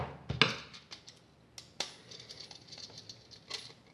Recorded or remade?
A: recorded